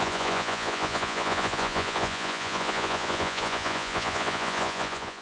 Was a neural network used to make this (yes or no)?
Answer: yes